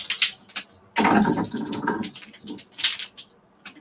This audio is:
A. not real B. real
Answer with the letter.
B